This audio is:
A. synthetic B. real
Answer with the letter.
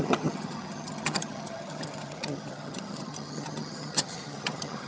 A